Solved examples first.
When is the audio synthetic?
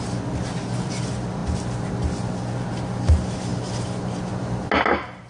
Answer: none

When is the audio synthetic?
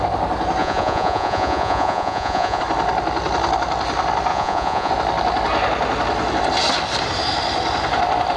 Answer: 0.6-2.6 (vocoder, Vocos); 4.3-4.9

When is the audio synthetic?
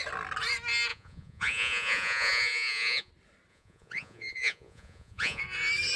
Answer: 0.9-3.1 (vocoder, Vocos); 3.5-5.4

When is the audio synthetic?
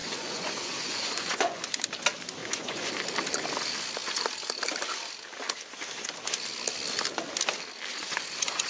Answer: 0.0-1.6 (vocoder, Vocos); 2.4-2.9; 7.9-8.7